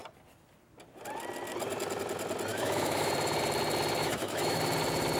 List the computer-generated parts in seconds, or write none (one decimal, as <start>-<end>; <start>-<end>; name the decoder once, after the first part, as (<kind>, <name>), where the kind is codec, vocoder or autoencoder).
2.5-3.1 (autoencoder, DAC-VAE); 4.0-4.6